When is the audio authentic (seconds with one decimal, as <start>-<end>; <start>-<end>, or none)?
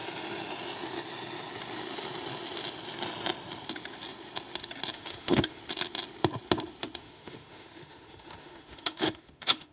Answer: 0.0-4.9; 5.6-7.0